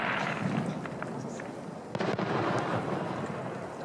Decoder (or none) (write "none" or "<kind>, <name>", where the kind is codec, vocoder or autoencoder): none